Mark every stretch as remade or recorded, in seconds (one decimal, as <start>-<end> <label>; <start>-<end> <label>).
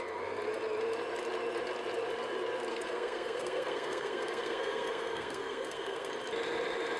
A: 0.0-2.7 recorded; 2.7-6.1 remade; 6.1-7.0 recorded